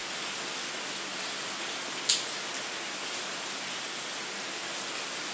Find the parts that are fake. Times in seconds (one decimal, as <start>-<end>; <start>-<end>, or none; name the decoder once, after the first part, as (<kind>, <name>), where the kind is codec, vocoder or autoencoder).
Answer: 1.1-2.1 (vocoder, BigVGAN v2)